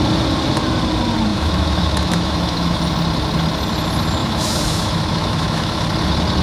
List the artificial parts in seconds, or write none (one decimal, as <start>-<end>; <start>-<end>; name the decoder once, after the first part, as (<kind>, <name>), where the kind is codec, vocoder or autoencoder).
1.3-2.8 (autoencoder, DAC-VAE); 4.2-5.8